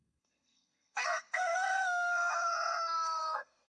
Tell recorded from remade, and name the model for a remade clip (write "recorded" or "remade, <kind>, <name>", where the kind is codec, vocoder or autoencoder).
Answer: remade, codec, SNAC